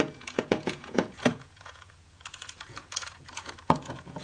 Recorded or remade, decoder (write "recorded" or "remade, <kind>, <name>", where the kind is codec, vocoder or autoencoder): remade, vocoder, Vocos